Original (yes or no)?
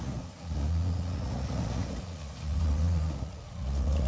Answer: no